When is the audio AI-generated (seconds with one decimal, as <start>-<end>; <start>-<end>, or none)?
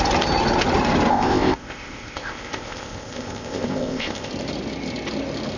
1.1-4.3